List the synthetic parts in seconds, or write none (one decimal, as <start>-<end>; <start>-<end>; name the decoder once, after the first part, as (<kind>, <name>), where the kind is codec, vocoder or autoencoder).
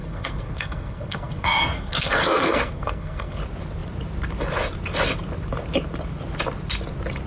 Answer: 0.0-3.4 (codec, SNAC)